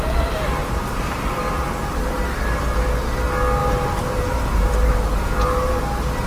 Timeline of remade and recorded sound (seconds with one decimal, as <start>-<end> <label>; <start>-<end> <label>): 0.0-0.6 recorded; 0.6-1.8 remade; 1.8-3.6 recorded; 3.6-5.8 remade; 5.8-6.3 recorded